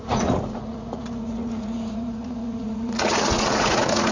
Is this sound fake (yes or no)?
yes